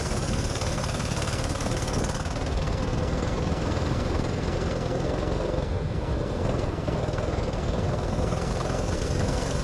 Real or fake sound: fake